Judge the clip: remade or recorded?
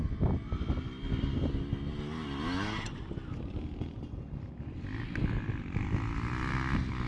recorded